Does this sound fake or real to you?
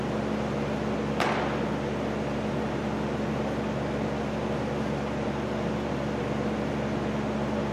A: real